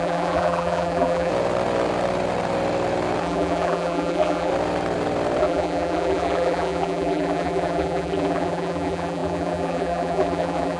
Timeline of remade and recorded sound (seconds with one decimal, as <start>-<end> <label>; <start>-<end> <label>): 0.0-1.3 remade; 1.3-3.2 recorded; 3.2-4.5 remade; 4.5-5.4 recorded; 5.4-10.8 remade

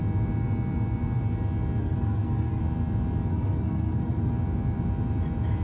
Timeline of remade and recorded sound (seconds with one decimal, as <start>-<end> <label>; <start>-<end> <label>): 0.0-1.8 recorded; 1.8-2.6 remade; 2.6-3.3 recorded; 3.3-4.3 remade; 4.3-5.6 recorded

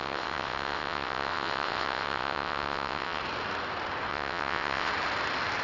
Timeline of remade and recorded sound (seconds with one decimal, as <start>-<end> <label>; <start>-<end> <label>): 0.0-3.2 remade; 3.2-4.1 recorded; 4.1-4.9 remade; 4.9-5.6 recorded

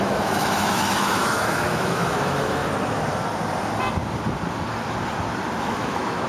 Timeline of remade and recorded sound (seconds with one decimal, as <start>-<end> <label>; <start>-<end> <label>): 0.0-2.6 remade; 2.6-5.6 recorded; 5.6-6.3 remade